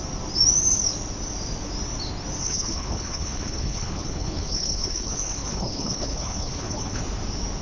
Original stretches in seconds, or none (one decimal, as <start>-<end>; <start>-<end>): 0.0-2.4; 7.0-7.6